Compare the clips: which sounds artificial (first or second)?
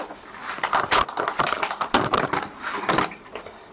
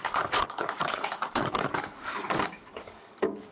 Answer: second